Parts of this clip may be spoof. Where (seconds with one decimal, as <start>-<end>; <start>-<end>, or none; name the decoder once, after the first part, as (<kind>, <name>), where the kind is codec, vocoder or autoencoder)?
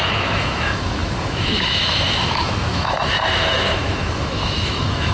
0.0-5.1 (autoencoder, DAC-VAE)